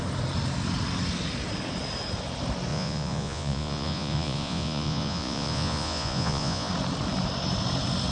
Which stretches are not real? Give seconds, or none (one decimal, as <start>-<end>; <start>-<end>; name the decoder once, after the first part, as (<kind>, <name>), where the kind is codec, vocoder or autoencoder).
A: 2.7-6.7 (vocoder, Vocos)